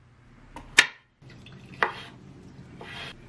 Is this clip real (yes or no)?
yes